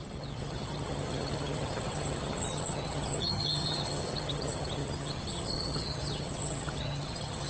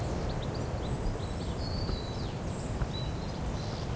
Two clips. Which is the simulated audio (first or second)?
first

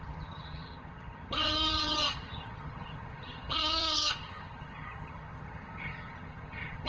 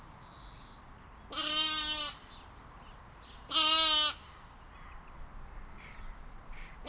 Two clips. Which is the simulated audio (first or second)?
first